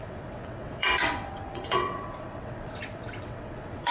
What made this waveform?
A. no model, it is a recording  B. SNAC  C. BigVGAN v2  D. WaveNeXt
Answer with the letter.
D